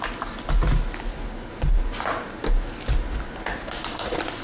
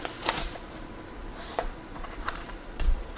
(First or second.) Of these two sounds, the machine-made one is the second